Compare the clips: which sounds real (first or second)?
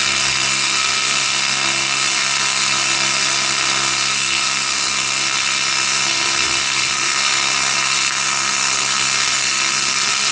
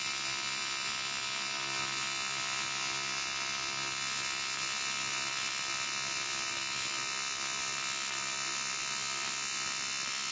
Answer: second